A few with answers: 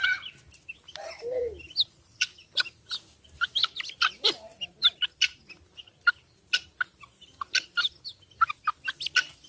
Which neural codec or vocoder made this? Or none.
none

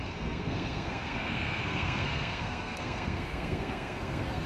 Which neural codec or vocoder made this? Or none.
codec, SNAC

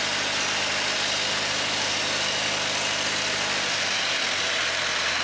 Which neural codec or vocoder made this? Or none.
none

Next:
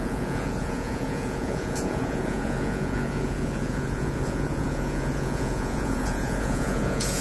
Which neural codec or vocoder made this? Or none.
vocoder, Vocos